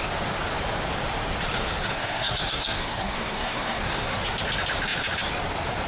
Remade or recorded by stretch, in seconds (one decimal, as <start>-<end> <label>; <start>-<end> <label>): 0.0-1.9 recorded; 1.9-4.2 remade; 4.2-5.9 recorded